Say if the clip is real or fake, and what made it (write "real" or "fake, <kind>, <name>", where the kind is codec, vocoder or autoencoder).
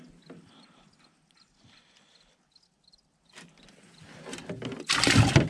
real